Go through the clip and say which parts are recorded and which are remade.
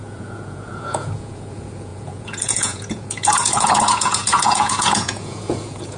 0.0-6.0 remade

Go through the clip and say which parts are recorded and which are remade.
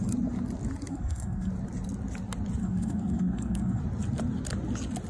0.0-0.9 recorded; 0.9-1.5 remade; 1.5-2.6 recorded; 2.6-3.8 remade; 3.8-5.1 recorded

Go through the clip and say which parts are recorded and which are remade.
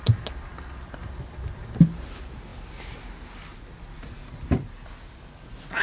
0.0-5.8 recorded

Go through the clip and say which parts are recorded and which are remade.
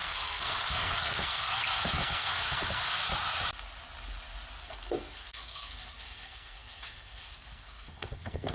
0.0-3.1 remade; 3.1-4.6 recorded; 4.6-8.5 remade